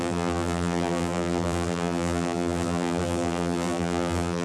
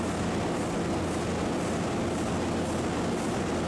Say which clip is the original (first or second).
second